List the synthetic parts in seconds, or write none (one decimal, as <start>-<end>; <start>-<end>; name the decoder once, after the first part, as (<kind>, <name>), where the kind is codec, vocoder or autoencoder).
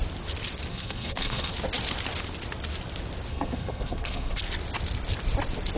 0.7-1.5 (codec, SNAC); 3.3-4.4